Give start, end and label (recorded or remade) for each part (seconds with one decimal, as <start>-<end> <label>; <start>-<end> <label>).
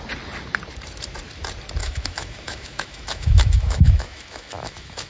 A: 0.0-1.8 recorded; 1.8-5.1 remade